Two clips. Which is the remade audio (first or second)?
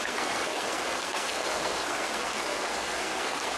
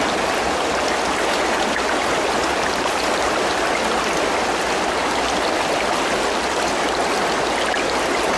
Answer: first